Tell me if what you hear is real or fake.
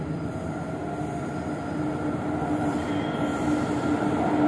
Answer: real